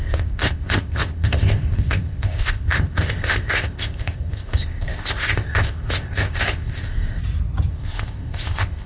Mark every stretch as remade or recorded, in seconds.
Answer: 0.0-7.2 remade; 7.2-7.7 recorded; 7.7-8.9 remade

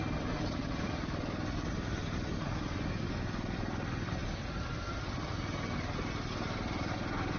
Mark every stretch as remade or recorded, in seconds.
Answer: 0.0-7.4 recorded

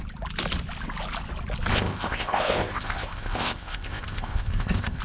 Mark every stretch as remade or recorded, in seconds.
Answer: 0.0-1.7 recorded; 1.7-5.0 remade